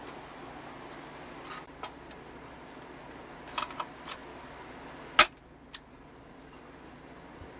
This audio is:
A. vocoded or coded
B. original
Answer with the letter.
B